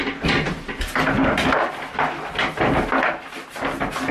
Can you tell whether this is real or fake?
real